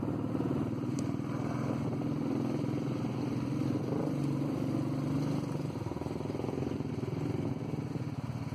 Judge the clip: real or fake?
real